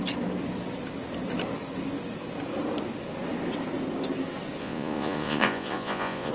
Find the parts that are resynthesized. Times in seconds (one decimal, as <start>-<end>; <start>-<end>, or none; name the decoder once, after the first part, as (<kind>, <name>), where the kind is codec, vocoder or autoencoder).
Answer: 4.6-6.3 (vocoder, Vocos)